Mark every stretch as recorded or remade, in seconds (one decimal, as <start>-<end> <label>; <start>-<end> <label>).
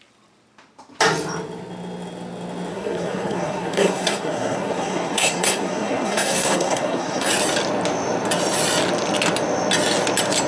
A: 0.0-2.7 recorded; 2.7-7.3 remade; 7.3-10.5 recorded